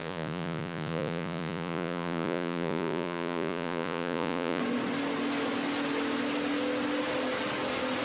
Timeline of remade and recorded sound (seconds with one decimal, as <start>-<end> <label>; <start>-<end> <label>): 0.0-4.6 remade; 4.6-8.0 recorded